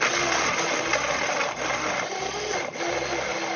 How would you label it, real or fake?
real